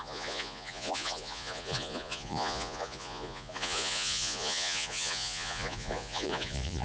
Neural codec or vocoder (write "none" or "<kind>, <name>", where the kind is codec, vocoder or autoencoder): vocoder, Vocos